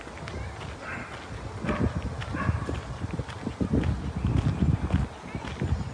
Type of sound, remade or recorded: recorded